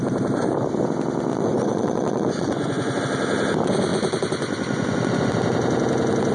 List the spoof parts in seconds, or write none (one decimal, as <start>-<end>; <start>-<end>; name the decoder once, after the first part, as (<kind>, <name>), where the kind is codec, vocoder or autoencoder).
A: 1.3-3.0 (vocoder, Vocos); 3.9-5.3

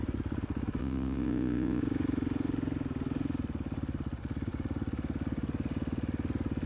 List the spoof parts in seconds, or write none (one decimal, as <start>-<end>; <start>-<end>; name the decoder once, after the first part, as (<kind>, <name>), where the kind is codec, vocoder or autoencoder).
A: 0.8-1.8 (vocoder, Vocos)

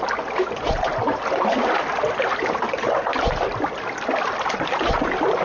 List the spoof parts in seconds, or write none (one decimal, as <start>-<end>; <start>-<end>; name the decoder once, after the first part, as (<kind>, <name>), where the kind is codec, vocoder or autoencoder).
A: none

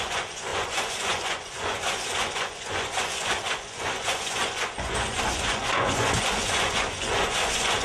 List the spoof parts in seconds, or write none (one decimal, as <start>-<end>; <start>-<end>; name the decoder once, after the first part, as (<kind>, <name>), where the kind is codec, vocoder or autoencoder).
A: 0.0-7.8 (vocoder, Vocos)

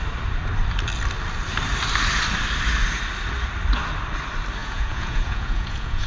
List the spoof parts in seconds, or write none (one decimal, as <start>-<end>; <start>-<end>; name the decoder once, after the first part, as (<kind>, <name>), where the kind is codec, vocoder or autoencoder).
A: 4.6-6.1 (vocoder, Vocos)

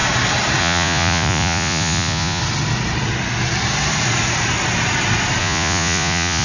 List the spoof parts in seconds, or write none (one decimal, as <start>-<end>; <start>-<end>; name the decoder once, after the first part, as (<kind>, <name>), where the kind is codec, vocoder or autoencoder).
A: 0.6-2.4 (vocoder, Vocos); 5.4-6.4